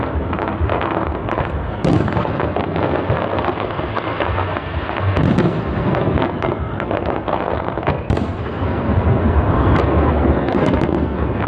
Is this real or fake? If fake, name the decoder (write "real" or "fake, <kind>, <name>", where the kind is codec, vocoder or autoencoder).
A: fake, codec, SNAC